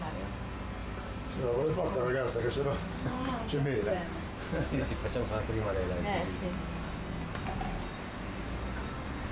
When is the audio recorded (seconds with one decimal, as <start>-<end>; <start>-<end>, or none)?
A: 0.0-0.8; 4.3-5.0; 5.8-9.3